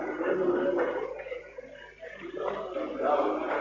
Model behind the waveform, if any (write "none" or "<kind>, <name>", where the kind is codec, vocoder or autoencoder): none